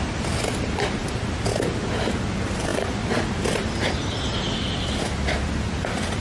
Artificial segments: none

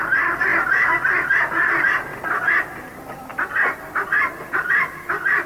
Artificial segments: 0.0-0.5; 1.7-2.1; 2.8-5.5

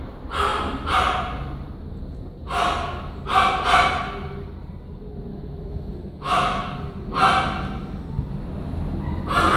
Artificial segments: 5.3-6.8

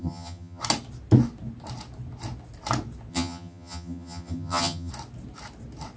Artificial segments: 0.0-0.6; 3.1-4.9

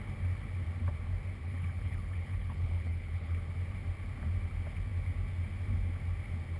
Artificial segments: 1.4-3.4

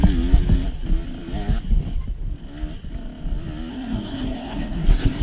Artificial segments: 3.7-5.2

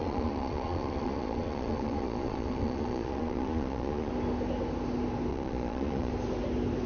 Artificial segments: 0.0-4.1; 5.3-6.1

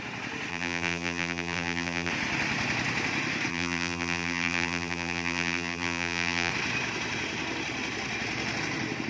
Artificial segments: 0.5-2.1; 3.5-6.5